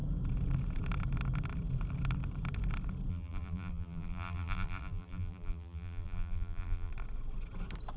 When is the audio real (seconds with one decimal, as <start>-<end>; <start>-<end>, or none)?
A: 0.0-3.1; 6.9-8.0